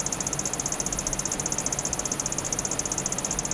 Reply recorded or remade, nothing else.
recorded